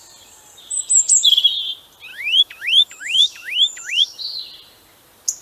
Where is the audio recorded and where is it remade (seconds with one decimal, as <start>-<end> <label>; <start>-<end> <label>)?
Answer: 0.0-2.1 recorded; 2.1-4.4 remade; 4.4-5.4 recorded